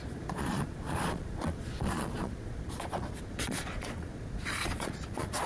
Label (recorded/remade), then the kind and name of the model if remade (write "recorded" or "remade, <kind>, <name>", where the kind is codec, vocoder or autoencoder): remade, vocoder, Vocos